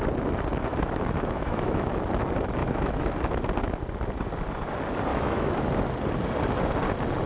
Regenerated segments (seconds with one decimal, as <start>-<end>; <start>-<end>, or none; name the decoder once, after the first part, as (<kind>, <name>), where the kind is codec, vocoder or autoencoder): 0.7-1.9 (autoencoder, DAC-VAE); 2.6-3.1; 5.1-5.6